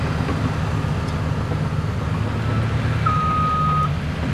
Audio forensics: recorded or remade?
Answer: recorded